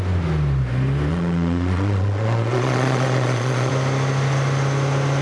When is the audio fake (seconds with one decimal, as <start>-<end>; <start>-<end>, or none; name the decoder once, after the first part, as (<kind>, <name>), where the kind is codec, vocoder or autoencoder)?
1.1-3.7 (vocoder, Vocos)